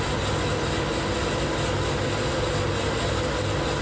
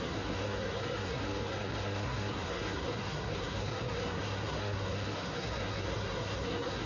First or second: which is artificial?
second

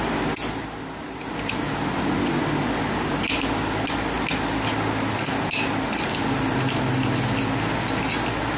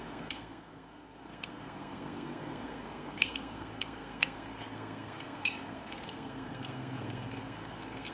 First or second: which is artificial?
second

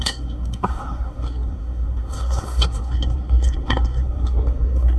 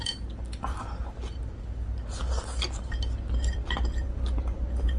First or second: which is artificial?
first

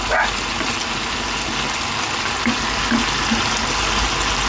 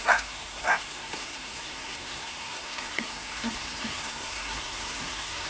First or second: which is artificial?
second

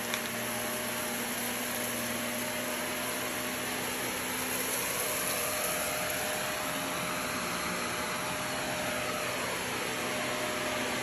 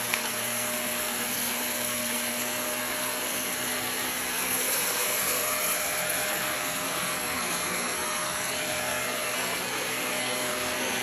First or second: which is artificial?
second